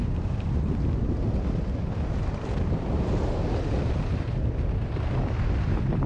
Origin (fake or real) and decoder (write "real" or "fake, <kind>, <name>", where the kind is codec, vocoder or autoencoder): real